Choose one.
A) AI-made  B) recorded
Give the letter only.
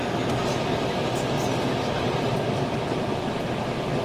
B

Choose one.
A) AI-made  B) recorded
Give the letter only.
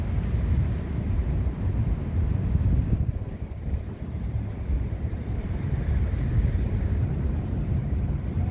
A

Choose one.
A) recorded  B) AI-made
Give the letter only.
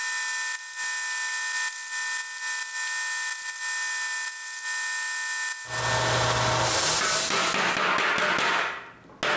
A